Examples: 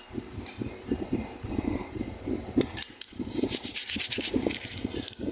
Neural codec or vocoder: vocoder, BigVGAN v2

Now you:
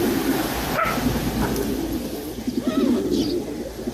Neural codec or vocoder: none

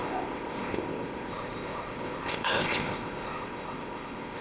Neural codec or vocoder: codec, ZipCodec